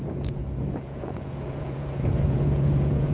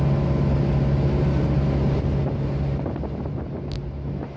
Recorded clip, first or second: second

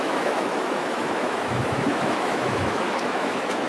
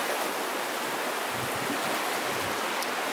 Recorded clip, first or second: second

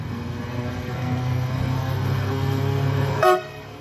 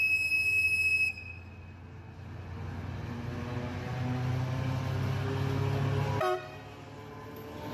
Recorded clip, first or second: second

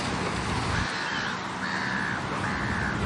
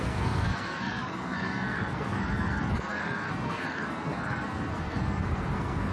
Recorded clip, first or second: first